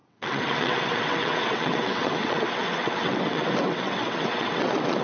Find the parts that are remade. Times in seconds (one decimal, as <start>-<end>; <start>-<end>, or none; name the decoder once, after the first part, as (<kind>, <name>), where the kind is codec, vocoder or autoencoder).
0.0-5.0 (vocoder, WaveNeXt)